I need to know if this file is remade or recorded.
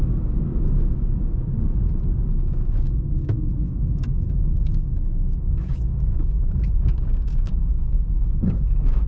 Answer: remade